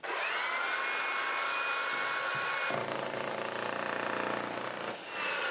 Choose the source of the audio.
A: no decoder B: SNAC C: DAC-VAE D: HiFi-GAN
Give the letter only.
A